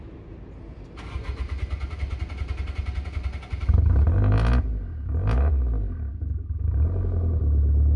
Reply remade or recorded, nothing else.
recorded